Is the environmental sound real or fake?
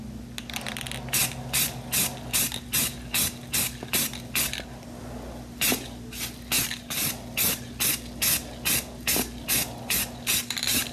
real